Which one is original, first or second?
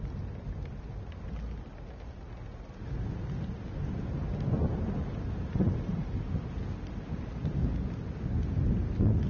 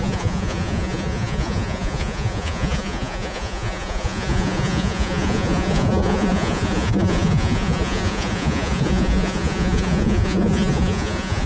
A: first